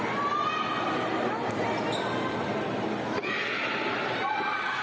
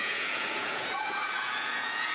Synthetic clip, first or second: second